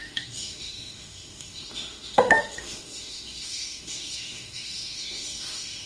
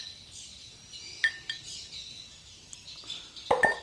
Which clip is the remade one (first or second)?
first